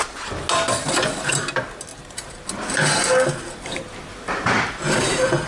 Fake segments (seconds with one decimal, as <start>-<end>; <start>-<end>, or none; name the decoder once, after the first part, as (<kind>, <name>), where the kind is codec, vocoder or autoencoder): none